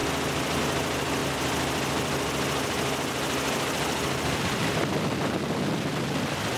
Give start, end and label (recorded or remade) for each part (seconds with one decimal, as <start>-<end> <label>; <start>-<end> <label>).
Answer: 0.0-0.6 recorded; 0.6-1.2 remade; 1.2-4.4 recorded; 4.4-6.6 remade